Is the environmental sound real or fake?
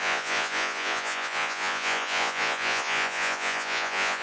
fake